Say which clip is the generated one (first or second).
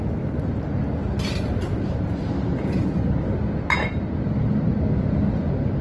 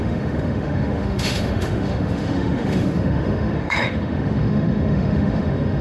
second